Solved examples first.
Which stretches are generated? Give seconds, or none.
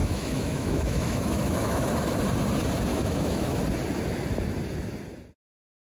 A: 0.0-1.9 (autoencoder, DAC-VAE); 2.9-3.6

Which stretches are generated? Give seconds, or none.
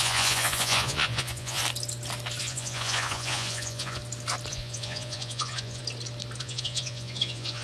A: 0.0-1.6 (vocoder, Vocos); 2.4-4.0; 4.5-5.8; 6.4-7.6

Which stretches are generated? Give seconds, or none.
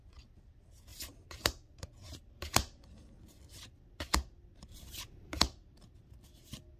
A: 0.9-2.3 (vocoder, BigVGAN v2); 4.7-5.4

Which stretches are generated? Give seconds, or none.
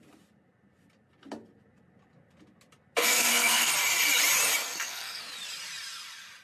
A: 3.0-3.7 (codec, SNAC); 4.6-5.2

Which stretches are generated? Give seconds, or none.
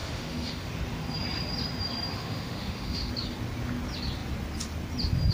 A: 0.0-0.7 (autoencoder, DAC-VAE); 2.1-3.1